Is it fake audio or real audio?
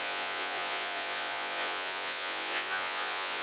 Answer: fake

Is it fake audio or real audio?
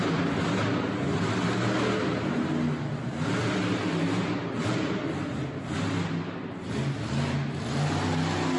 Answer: real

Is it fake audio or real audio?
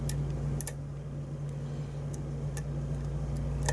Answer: real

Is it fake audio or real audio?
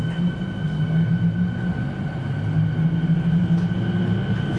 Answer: real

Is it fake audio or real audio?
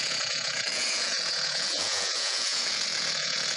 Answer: fake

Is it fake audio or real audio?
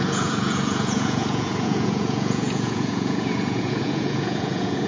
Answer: fake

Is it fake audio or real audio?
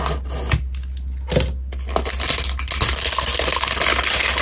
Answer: real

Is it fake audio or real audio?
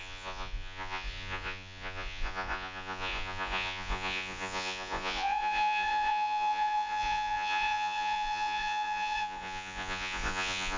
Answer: fake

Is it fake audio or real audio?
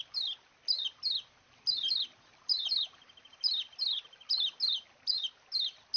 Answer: real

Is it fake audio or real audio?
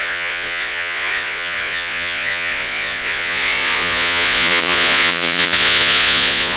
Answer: fake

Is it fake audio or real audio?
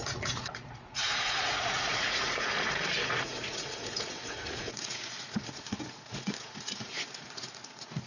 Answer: fake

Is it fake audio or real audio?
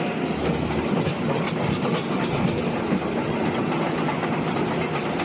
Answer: real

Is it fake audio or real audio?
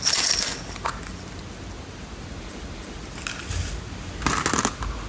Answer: real